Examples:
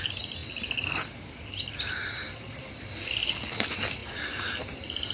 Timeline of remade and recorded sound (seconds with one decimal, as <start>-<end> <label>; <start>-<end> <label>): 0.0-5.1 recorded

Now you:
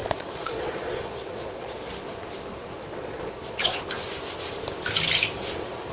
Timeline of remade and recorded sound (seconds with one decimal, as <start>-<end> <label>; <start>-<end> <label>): 0.0-1.9 remade; 1.9-2.8 recorded; 2.8-3.8 remade; 3.8-5.9 recorded

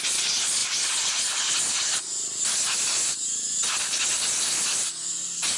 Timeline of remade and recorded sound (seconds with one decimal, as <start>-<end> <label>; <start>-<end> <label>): 0.0-5.6 recorded

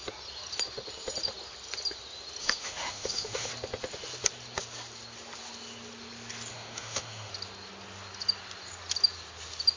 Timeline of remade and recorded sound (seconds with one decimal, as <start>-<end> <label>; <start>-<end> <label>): 0.0-2.4 recorded; 2.4-3.5 remade; 3.5-6.5 recorded; 6.5-7.3 remade; 7.3-9.8 recorded

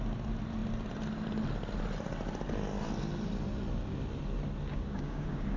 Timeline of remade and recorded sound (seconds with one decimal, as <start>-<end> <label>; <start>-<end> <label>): 0.0-4.7 recorded; 4.7-5.6 remade